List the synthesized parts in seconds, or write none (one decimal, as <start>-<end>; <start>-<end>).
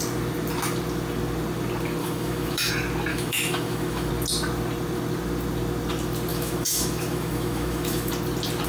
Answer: 2.0-2.7; 3.1-4.1; 6.3-8.1